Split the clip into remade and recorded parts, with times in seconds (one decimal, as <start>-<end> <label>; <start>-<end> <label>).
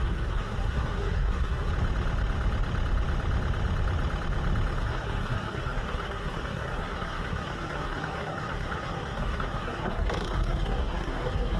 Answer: 0.0-1.7 remade; 1.7-4.8 recorded; 4.8-11.6 remade